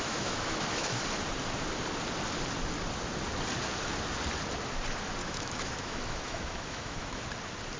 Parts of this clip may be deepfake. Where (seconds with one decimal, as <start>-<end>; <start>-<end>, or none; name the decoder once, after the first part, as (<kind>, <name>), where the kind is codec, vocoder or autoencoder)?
0.0-1.0 (autoencoder, DAC-VAE); 5.2-7.2